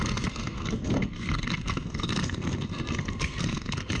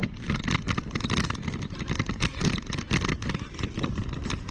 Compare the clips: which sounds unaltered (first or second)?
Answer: second